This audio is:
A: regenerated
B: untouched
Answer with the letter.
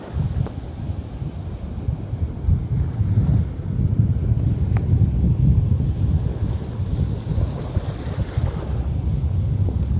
B